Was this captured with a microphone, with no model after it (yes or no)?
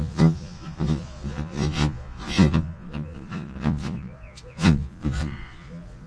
no